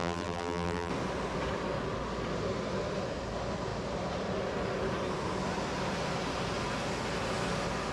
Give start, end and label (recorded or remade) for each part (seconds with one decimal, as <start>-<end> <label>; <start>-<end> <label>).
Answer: 0.0-0.9 remade; 0.9-7.9 recorded